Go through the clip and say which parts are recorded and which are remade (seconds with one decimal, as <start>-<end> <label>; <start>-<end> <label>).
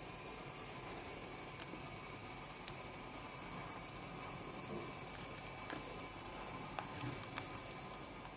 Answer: 0.0-8.4 recorded